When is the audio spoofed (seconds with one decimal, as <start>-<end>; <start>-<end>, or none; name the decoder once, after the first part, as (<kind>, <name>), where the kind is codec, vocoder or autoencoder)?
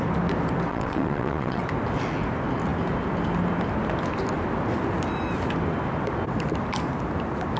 0.7-1.6 (vocoder, WaveNeXt)